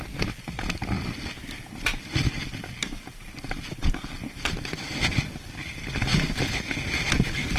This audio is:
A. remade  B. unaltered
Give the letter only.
B